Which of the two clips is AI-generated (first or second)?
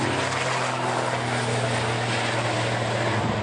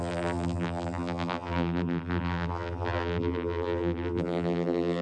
second